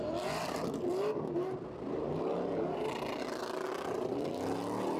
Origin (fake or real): real